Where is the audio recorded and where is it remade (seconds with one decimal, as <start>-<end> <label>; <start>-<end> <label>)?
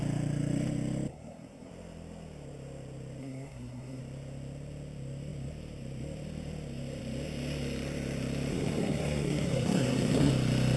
0.0-1.1 recorded; 1.1-1.7 remade; 1.7-3.2 recorded; 3.2-4.0 remade; 4.0-8.5 recorded; 8.5-10.3 remade; 10.3-10.8 recorded